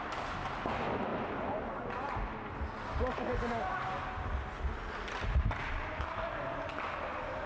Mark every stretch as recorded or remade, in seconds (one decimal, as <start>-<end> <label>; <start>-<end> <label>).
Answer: 0.0-7.5 recorded